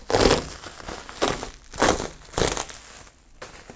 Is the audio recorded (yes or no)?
yes